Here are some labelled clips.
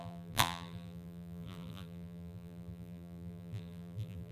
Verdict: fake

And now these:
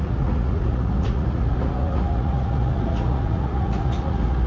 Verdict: fake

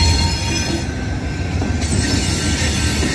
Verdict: real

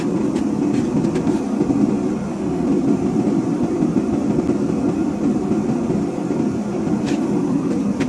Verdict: real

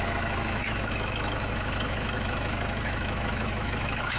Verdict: fake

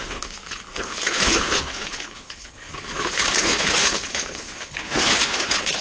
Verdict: fake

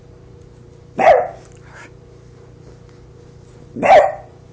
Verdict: real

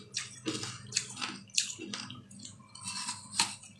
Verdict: real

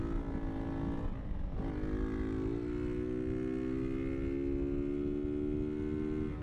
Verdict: real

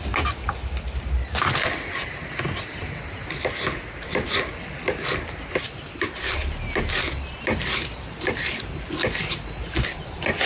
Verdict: real